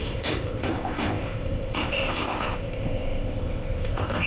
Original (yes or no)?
no